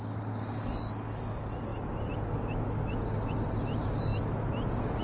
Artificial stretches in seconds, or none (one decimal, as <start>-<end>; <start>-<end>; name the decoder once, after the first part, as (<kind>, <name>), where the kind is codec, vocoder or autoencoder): none